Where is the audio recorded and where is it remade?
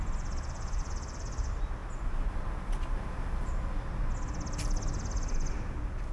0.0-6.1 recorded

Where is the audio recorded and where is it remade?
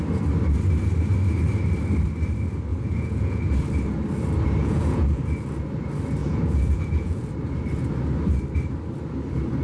0.0-2.7 recorded; 2.7-3.5 remade; 3.5-4.6 recorded; 4.6-5.2 remade; 5.2-6.2 recorded; 6.2-7.3 remade; 7.3-9.6 recorded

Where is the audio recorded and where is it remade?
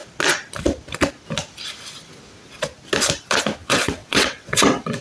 0.0-3.6 recorded; 3.6-5.0 remade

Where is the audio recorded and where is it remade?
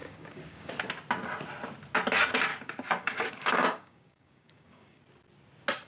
0.0-0.7 remade; 0.7-2.5 recorded; 2.5-5.0 remade; 5.0-5.9 recorded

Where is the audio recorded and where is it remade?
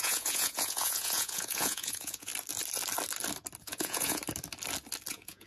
0.0-2.3 remade; 2.3-3.6 recorded; 3.6-4.2 remade; 4.2-5.1 recorded; 5.1-5.5 remade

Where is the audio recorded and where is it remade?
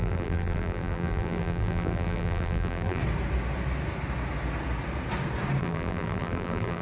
0.0-3.0 remade; 3.0-5.6 recorded; 5.6-6.8 remade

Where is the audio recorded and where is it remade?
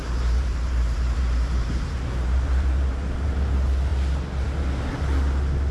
0.0-3.3 remade; 3.3-5.7 recorded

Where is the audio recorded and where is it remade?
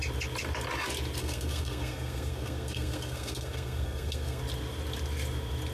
0.0-1.2 recorded; 1.2-4.4 remade; 4.4-5.7 recorded